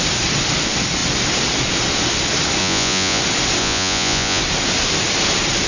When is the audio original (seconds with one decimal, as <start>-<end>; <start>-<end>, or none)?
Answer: 0.0-2.6; 3.2-3.6; 4.4-5.7